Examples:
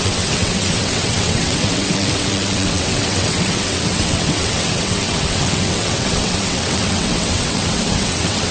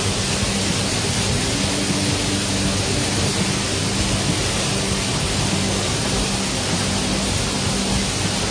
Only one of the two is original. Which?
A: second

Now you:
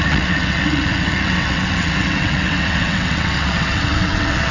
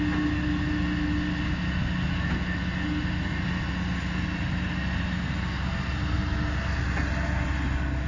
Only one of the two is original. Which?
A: second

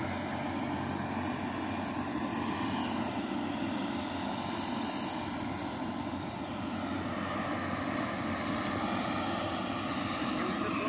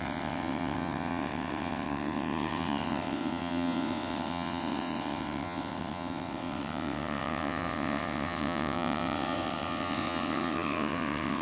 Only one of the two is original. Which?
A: first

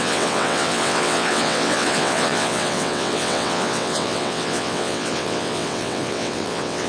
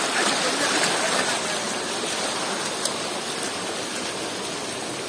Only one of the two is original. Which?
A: second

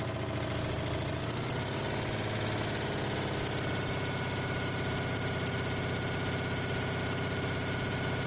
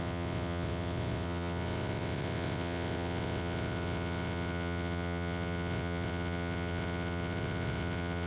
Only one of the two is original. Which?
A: first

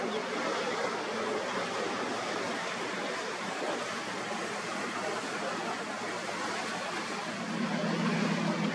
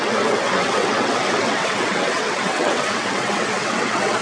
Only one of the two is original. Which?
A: first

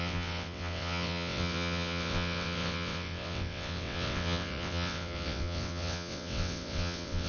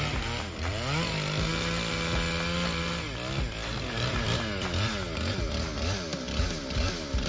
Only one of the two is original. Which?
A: second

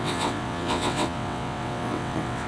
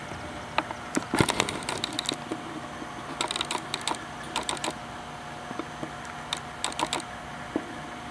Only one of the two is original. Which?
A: second